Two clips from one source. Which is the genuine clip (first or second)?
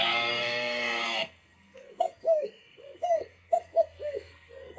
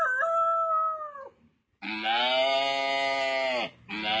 second